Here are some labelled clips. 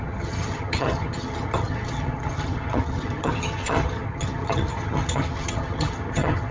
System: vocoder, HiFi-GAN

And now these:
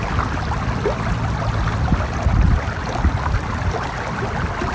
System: none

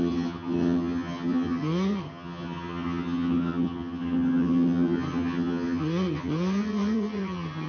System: vocoder, HiFi-GAN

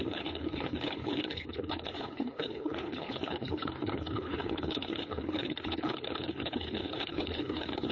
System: codec, HILCodec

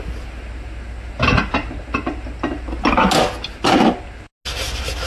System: none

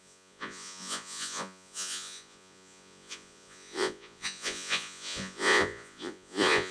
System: vocoder, Vocos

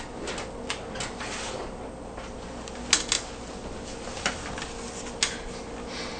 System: none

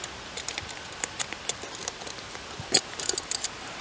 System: none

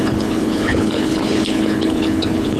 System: codec, HILCodec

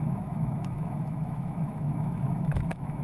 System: autoencoder, DAC-VAE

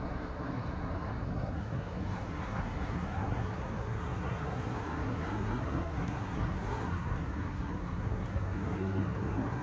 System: codec, SNAC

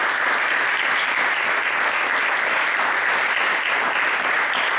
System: none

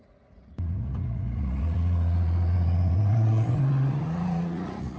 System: vocoder, Vocos